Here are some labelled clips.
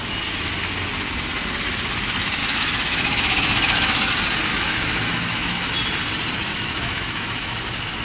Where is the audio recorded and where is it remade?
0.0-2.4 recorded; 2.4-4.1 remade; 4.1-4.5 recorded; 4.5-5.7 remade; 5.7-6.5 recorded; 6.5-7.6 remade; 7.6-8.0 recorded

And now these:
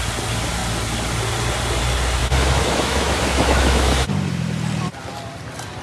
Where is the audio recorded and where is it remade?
0.0-2.2 recorded; 2.2-4.1 remade; 4.1-5.8 recorded

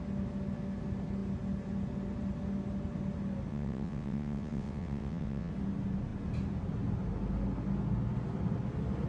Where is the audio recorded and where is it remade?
0.0-3.5 recorded; 3.5-5.5 remade; 5.5-9.1 recorded

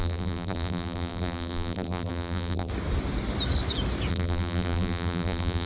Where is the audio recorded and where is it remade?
0.0-2.7 remade; 2.7-4.1 recorded; 4.1-5.7 remade

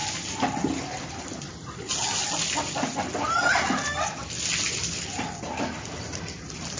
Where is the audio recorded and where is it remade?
0.0-6.8 recorded

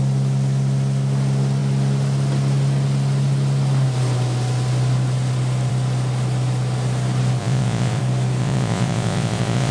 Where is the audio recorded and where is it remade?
0.0-7.4 recorded; 7.4-8.0 remade; 8.0-8.4 recorded; 8.4-9.7 remade